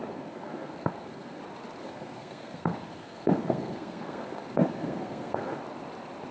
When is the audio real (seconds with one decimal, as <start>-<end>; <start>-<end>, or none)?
1.4-1.8; 5.6-6.3